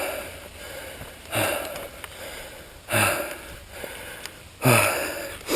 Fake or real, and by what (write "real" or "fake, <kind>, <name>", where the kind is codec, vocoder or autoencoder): real